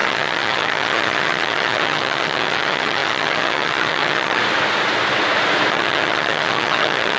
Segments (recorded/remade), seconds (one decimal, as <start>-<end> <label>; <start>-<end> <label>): 0.0-4.4 remade; 4.4-5.7 recorded; 5.7-7.2 remade